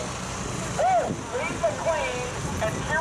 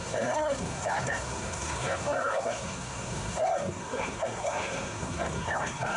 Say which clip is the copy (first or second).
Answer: second